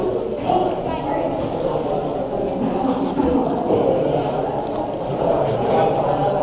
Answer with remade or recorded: recorded